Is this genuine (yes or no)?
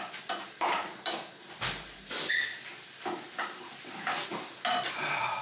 no